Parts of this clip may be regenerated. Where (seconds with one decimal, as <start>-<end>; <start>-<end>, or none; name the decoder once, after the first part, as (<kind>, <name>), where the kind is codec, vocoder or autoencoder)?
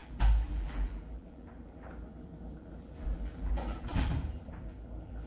0.0-5.3 (vocoder, BigVGAN v2)